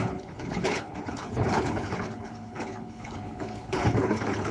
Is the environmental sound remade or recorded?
remade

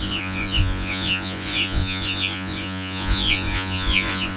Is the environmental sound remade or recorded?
remade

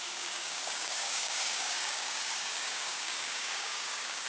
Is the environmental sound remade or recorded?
remade